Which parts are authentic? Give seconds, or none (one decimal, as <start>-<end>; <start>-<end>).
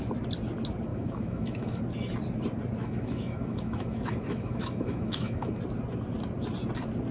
0.0-0.9; 1.8-2.8; 5.6-7.1